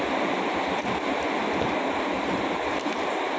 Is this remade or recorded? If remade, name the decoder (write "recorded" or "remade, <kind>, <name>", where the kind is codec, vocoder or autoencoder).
recorded